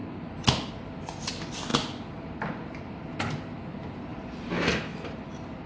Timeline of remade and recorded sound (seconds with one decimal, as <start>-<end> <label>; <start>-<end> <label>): 0.0-5.7 recorded